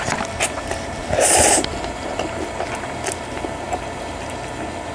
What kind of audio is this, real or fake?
real